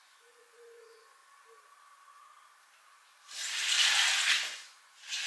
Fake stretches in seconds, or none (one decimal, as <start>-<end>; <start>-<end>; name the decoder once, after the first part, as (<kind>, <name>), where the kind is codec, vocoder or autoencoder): 0.0-1.2 (vocoder, Vocos); 4.4-5.3